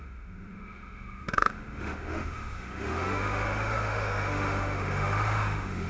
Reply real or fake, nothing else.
fake